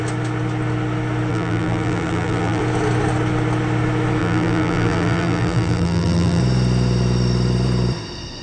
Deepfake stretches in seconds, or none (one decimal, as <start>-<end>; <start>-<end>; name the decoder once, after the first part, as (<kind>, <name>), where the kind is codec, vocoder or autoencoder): 1.3-2.6 (vocoder, BigVGAN v2); 4.2-6.4